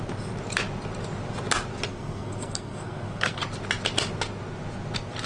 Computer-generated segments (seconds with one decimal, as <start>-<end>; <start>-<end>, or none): 1.9-3.4